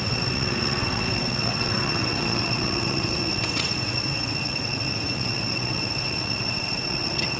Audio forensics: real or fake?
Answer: fake